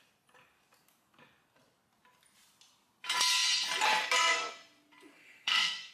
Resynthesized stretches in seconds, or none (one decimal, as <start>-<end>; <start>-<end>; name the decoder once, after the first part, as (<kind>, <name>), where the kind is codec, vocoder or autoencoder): 5.1-5.9 (codec, SNAC)